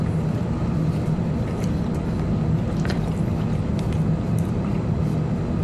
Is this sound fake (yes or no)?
no